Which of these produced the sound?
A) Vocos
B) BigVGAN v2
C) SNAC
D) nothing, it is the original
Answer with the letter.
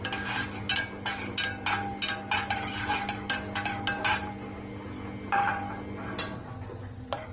D